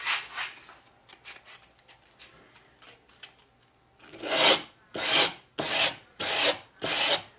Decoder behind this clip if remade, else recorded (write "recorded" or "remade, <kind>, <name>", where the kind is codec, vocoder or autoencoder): recorded